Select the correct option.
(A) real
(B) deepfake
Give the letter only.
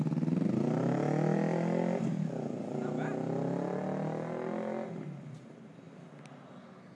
A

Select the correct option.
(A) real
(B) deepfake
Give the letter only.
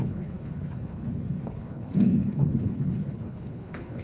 B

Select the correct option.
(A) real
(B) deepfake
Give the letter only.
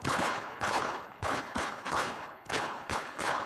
B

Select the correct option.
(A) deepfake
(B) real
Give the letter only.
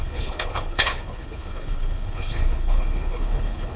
A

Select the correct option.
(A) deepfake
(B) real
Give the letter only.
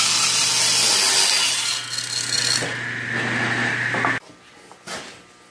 B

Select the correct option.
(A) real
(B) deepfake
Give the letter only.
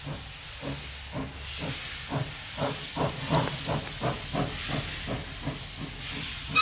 A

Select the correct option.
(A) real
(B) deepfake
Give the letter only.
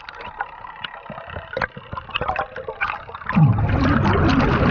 A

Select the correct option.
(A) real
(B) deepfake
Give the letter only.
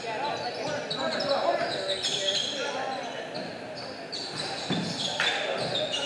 A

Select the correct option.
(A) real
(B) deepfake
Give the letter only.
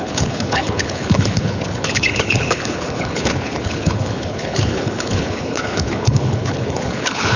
B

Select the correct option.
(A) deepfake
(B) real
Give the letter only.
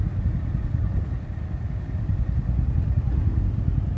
B